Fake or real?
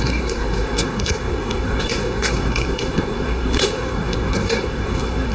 fake